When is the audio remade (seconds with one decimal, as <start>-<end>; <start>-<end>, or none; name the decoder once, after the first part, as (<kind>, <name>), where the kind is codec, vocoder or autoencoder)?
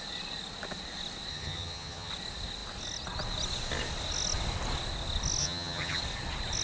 1.3-2.1 (vocoder, HiFi-GAN); 5.4-6.0